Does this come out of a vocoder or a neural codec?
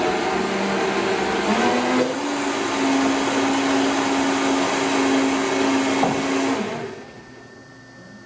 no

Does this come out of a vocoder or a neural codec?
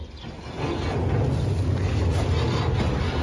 no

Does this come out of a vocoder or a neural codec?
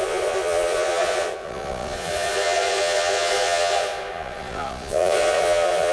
yes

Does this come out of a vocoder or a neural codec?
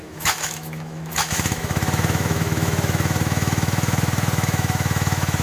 yes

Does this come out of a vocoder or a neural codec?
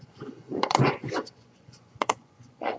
yes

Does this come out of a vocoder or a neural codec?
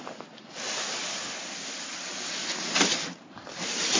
no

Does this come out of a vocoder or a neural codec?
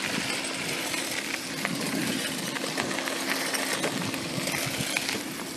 no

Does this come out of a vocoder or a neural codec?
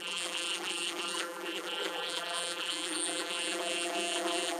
yes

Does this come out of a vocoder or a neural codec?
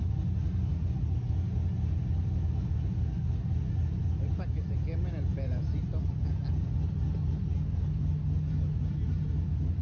no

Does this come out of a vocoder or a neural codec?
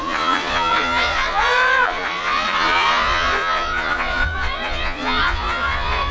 yes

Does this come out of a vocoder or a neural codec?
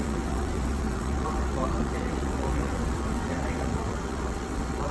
yes